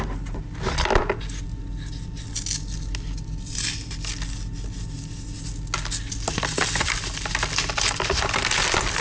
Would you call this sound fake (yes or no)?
no